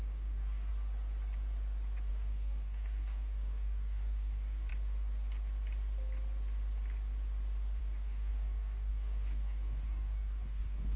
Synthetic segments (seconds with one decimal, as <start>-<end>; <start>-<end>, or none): 0.0-0.7; 2.1-4.7; 7.8-11.0